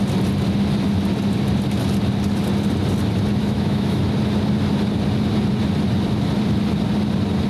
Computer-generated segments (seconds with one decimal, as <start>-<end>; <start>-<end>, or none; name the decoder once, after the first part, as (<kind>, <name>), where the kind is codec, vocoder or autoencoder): 3.4-4.0 (autoencoder, DAC-VAE)